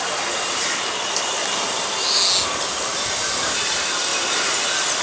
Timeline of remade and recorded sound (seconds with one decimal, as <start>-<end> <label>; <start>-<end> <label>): 0.0-1.4 recorded; 1.4-2.2 remade; 2.2-5.0 recorded